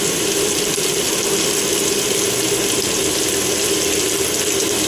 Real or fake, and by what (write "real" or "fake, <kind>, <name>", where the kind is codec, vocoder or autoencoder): real